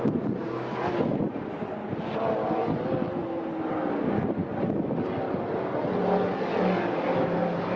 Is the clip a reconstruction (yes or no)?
no